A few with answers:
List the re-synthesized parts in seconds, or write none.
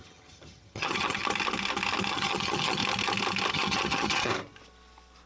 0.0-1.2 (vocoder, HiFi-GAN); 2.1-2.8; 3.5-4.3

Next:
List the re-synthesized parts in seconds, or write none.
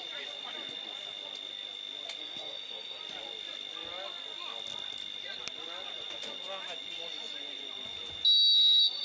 2.2-3.0 (codec, SNAC)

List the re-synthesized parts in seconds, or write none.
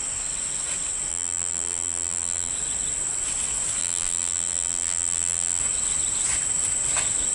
1.1-2.5 (vocoder, BigVGAN v2); 3.8-5.6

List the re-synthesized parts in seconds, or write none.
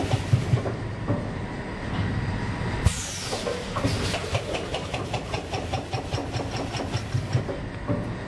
0.0-1.7 (vocoder, BigVGAN v2); 2.3-6.2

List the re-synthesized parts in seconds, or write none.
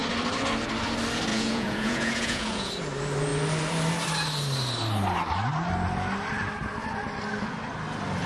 1.3-2.7 (vocoder, Vocos)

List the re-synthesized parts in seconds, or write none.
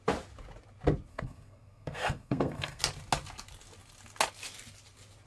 1.1-2.8 (codec, SNAC)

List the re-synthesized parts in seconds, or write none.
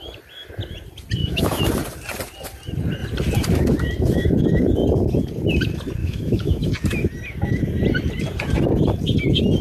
1.2-1.7 (autoencoder, DAC-VAE); 6.0-6.7